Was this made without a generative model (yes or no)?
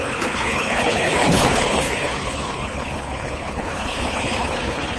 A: no